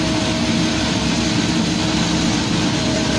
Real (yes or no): yes